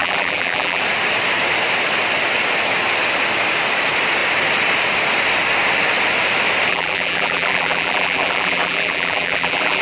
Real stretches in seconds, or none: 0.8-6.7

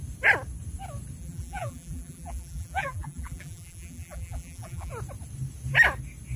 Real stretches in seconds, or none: 0.0-1.2; 4.9-6.4

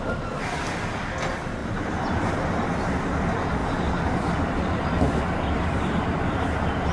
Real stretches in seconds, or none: 0.0-1.6; 2.3-3.6; 5.0-6.9

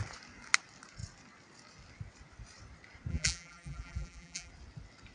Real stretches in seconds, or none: 0.0-3.1; 4.5-5.1

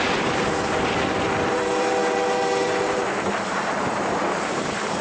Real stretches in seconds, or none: none

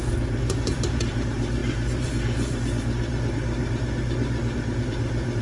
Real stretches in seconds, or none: none